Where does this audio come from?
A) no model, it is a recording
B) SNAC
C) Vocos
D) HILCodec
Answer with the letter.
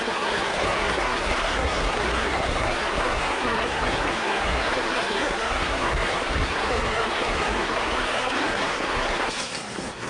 B